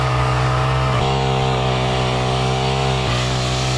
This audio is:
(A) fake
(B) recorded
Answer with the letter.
A